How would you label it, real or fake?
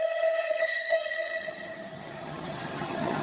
fake